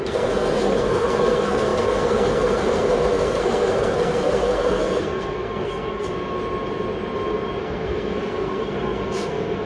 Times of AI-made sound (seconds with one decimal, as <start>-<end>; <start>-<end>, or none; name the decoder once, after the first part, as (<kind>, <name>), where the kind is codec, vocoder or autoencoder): 0.0-6.1 (codec, SNAC); 7.6-9.7